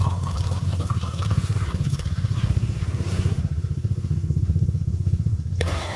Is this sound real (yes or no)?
no